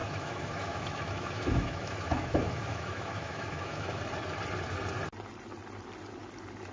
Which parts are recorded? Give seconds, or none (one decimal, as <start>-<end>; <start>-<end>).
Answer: 4.0-6.7